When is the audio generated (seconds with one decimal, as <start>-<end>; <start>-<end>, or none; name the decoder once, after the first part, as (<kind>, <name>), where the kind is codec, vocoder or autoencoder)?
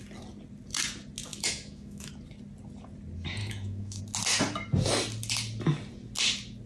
1.3-2.1 (autoencoder, DAC-VAE); 3.4-4.0